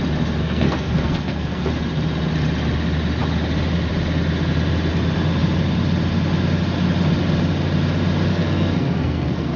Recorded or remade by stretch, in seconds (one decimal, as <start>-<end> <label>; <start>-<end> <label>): 0.0-0.4 recorded; 0.4-1.7 remade; 1.7-8.3 recorded; 8.3-9.6 remade